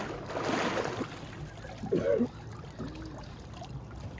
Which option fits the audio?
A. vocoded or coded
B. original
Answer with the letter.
B